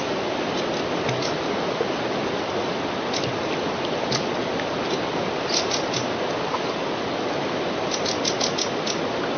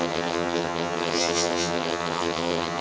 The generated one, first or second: second